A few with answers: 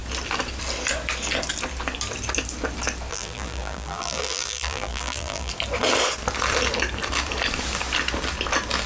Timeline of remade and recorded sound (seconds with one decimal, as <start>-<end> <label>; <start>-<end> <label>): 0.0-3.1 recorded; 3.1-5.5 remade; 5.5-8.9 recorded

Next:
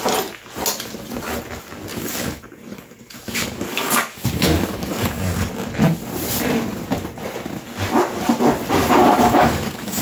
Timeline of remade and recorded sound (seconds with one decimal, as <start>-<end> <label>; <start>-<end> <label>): 0.0-1.9 recorded; 1.9-5.5 remade; 5.5-8.8 recorded; 8.8-10.0 remade

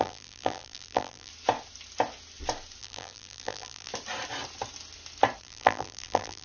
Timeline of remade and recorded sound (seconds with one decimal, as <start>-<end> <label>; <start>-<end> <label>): 0.0-1.3 remade; 1.3-2.8 recorded; 2.8-3.9 remade; 3.9-5.4 recorded; 5.4-6.4 remade

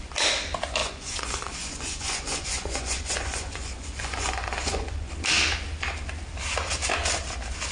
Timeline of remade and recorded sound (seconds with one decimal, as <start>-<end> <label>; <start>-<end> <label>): 0.0-0.8 recorded; 0.8-5.1 remade; 5.1-7.7 recorded

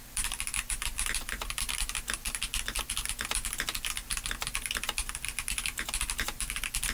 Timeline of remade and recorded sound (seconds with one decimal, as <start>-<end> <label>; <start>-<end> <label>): 0.0-6.9 recorded